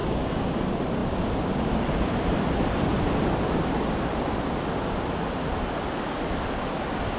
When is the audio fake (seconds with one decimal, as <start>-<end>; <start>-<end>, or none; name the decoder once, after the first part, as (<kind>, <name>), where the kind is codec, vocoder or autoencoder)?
0.0-0.6 (codec, DAC)